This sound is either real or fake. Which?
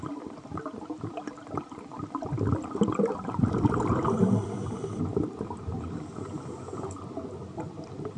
fake